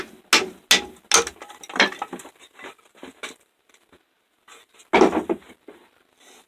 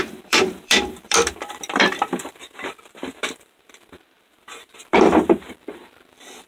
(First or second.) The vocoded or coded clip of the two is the second